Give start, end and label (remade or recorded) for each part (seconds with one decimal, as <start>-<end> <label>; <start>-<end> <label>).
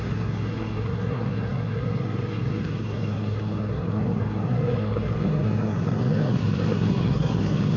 0.0-7.8 remade